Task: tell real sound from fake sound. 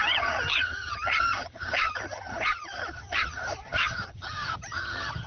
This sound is fake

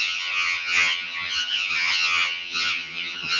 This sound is fake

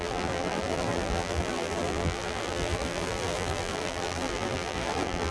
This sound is fake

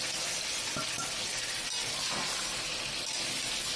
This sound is real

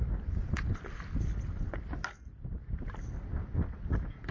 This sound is real